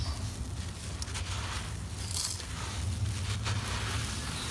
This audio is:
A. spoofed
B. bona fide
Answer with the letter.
B